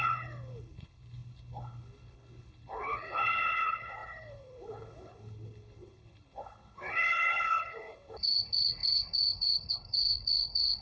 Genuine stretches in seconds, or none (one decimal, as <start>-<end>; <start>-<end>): none